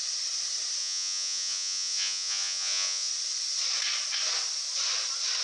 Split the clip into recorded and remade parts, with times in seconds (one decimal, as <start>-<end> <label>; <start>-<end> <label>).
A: 0.0-0.8 recorded; 0.8-3.1 remade; 3.1-5.4 recorded